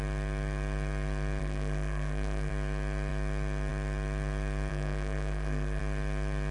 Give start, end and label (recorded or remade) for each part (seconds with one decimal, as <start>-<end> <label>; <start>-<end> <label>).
0.0-1.4 recorded; 1.4-2.5 remade; 2.5-4.7 recorded; 4.7-5.8 remade; 5.8-6.5 recorded